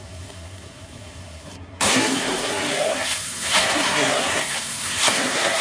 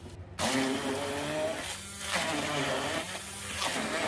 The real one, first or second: second